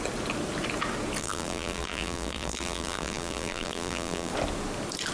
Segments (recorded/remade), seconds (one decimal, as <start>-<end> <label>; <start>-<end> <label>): 0.0-1.2 recorded; 1.2-4.3 remade; 4.3-5.1 recorded